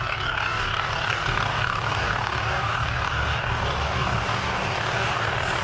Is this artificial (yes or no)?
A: yes